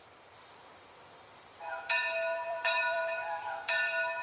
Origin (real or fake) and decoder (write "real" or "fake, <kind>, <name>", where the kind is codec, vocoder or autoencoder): fake, vocoder, BigVGAN v2